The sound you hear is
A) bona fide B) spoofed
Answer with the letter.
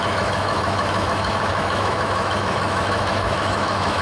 B